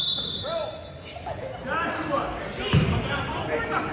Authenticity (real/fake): real